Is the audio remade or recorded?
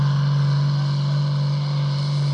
recorded